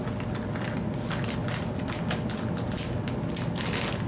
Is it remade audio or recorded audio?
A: recorded